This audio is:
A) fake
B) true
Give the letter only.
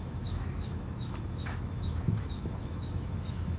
A